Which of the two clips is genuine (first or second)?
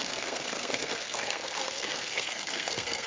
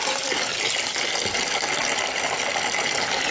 second